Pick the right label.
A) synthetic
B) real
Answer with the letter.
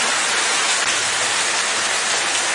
B